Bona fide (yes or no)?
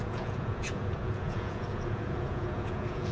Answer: no